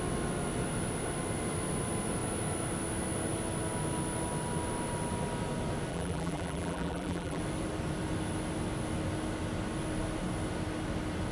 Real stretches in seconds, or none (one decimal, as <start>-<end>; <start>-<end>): 0.0-5.9; 7.4-11.3

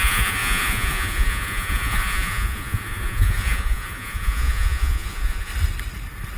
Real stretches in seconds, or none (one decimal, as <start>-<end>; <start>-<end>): 5.5-6.4

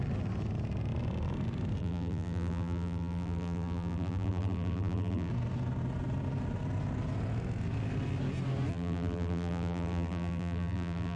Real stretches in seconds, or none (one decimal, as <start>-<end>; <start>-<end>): 0.0-1.8; 5.3-8.7

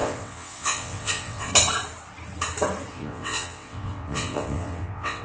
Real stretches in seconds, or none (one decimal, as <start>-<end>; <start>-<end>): 1.5-2.9